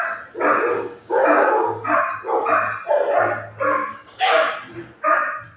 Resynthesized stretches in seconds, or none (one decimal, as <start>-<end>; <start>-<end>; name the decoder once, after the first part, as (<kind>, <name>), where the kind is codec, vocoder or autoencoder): 0.7-2.0 (codec, DAC); 3.7-4.5